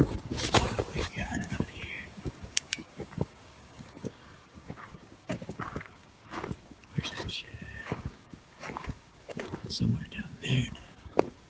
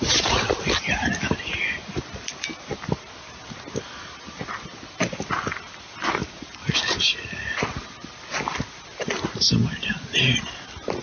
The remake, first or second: first